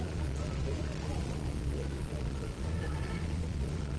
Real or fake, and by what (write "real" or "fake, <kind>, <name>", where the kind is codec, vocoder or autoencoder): fake, vocoder, Vocos